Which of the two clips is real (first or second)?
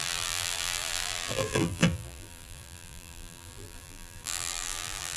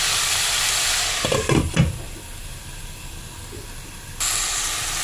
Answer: second